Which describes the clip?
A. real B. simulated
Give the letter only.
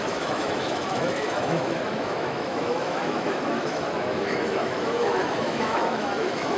B